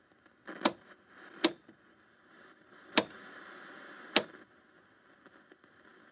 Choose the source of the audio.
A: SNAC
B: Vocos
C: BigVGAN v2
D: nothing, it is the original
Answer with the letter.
D